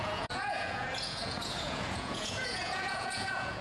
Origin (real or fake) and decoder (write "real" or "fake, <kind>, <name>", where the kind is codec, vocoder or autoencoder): fake, vocoder, Vocos